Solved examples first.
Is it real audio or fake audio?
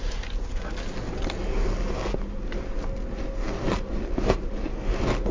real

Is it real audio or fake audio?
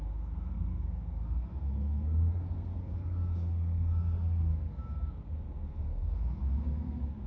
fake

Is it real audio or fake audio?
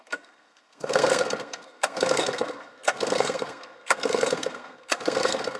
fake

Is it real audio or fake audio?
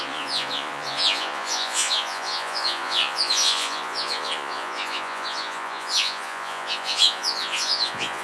fake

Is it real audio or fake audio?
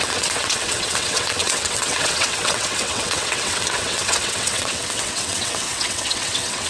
fake